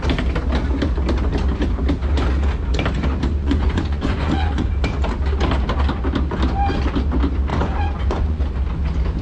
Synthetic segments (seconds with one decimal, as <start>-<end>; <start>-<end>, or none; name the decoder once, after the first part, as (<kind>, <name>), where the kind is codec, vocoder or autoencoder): 3.4-4.7 (vocoder, Vocos); 7.5-8.4